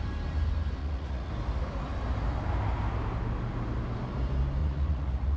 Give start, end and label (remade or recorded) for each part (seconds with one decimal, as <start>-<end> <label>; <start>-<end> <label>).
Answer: 0.0-0.8 recorded; 0.8-1.3 remade; 1.3-4.6 recorded; 4.6-5.4 remade

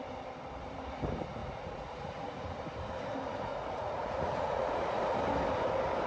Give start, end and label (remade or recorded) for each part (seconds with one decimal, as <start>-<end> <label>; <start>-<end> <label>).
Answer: 0.0-1.4 recorded; 1.4-2.6 remade; 2.6-3.5 recorded; 3.5-5.0 remade; 5.0-6.1 recorded

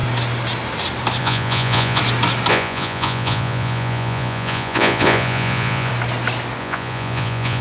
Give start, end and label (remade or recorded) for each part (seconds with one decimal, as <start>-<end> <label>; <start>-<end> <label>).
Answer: 0.0-1.2 recorded; 1.2-2.0 remade; 2.0-2.5 recorded; 2.5-5.9 remade; 5.9-6.6 recorded; 6.6-7.6 remade

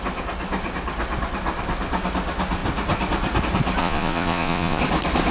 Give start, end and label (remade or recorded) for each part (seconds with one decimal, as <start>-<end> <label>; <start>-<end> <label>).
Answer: 0.0-3.8 recorded; 3.8-4.8 remade; 4.8-5.3 recorded

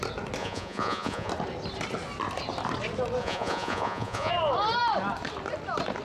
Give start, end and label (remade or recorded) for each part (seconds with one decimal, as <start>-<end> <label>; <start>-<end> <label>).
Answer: 0.0-0.4 recorded; 0.4-1.3 remade; 1.3-3.2 recorded; 3.2-4.3 remade; 4.3-6.0 recorded

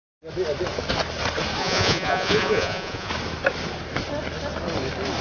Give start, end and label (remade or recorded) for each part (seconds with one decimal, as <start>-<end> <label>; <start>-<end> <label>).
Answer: 0.0-1.6 recorded; 1.6-3.1 remade; 3.1-5.2 recorded